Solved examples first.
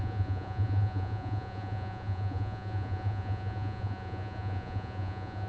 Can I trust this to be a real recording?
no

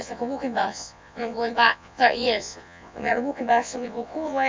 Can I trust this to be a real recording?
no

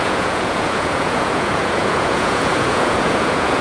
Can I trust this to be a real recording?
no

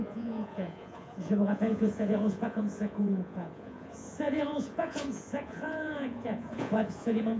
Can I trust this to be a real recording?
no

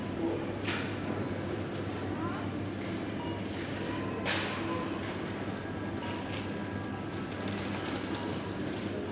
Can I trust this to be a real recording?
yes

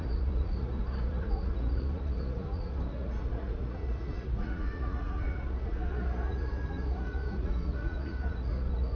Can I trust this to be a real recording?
no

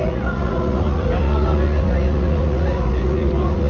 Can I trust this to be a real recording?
no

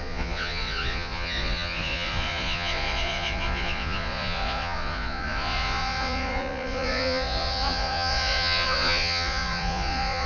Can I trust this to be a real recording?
no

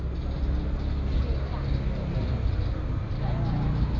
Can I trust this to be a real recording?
yes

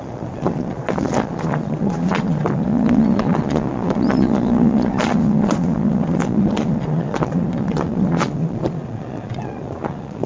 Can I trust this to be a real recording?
no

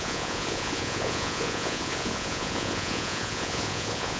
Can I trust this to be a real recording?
no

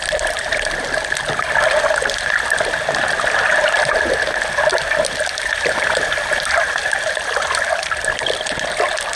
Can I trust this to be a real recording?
yes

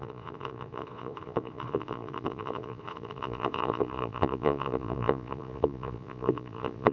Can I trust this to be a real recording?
no